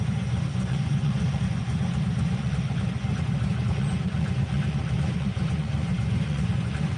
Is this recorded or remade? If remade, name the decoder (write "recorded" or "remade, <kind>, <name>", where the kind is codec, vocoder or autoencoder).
remade, vocoder, Vocos